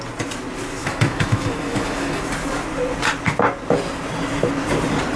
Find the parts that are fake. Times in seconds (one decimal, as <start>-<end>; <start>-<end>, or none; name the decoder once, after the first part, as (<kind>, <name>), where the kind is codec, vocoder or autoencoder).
0.8-2.2 (autoencoder, DAC-VAE)